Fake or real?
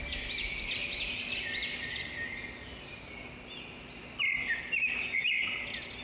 real